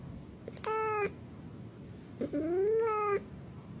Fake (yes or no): no